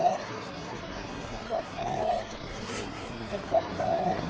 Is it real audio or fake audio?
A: fake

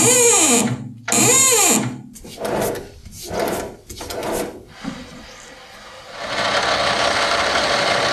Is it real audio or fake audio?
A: real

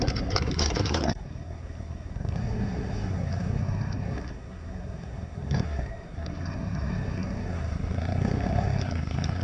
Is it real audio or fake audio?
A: fake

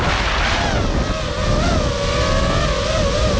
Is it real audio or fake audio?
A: real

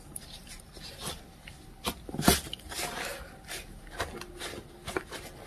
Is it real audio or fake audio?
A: real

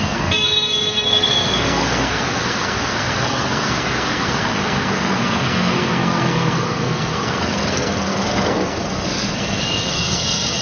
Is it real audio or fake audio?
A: fake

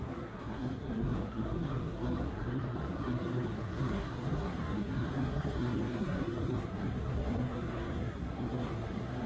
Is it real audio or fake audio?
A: fake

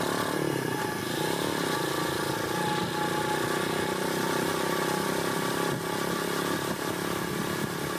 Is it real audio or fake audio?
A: real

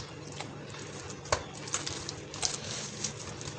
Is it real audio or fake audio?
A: real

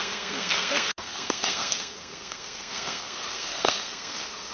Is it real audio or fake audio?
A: fake